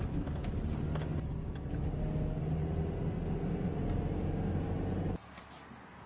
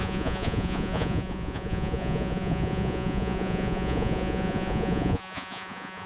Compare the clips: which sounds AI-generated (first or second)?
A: second